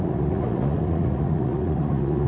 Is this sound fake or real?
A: fake